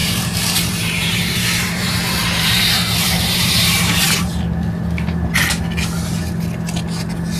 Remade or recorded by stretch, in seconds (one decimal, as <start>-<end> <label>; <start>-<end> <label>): 0.0-4.4 remade; 4.4-7.4 recorded